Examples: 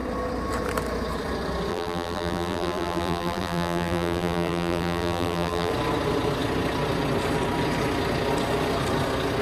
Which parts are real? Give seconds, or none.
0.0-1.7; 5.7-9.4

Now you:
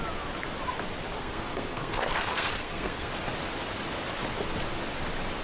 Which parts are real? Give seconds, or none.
0.0-1.2; 3.1-5.4

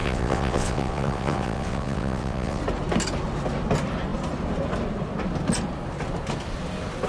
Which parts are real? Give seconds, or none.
2.6-7.1

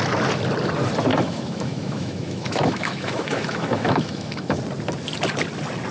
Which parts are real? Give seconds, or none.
0.0-1.1; 4.6-5.9

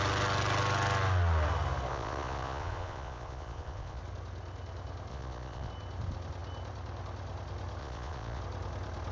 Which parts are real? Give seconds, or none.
0.0-1.9; 4.0-5.1; 5.7-7.8; 8.4-9.1

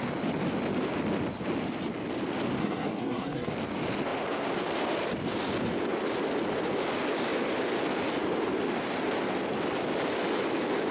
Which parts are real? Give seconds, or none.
0.0-2.6; 3.5-10.9

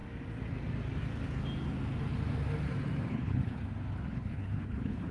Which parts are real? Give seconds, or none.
0.0-3.1; 3.6-4.1

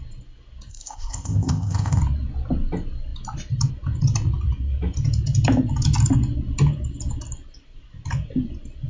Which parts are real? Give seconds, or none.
0.0-0.7; 2.0-8.9